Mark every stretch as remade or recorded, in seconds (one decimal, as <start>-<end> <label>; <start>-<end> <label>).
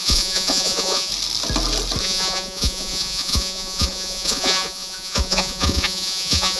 0.0-1.1 remade; 1.1-2.0 recorded; 2.0-6.6 remade